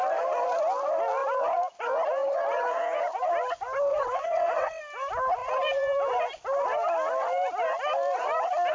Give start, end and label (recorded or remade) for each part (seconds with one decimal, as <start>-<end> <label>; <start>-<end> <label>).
0.0-3.9 recorded; 3.9-4.8 remade; 4.8-8.7 recorded